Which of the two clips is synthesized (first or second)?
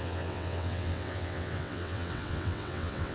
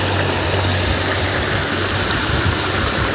first